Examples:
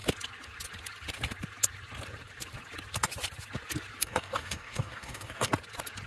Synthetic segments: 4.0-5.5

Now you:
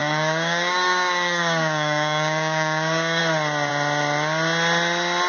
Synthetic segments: 0.0-3.2

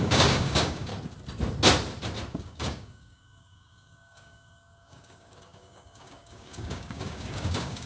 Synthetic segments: 0.0-0.9; 2.3-7.9

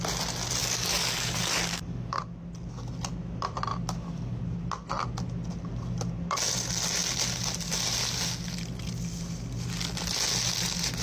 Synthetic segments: 0.6-2.2; 3.7-4.4

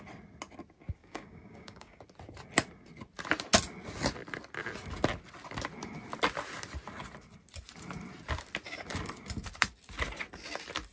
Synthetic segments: 1.0-2.0